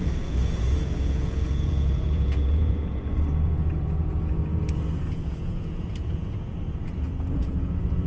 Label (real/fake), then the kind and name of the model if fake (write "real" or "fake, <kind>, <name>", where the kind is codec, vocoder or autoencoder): fake, vocoder, Vocos